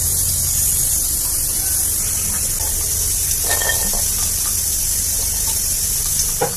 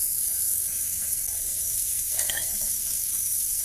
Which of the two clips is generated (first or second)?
second